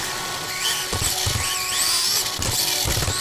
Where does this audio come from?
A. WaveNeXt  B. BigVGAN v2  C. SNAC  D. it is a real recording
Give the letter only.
D